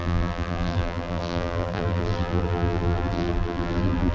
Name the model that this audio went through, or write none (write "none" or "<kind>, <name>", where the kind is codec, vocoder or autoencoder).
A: vocoder, BigVGAN v2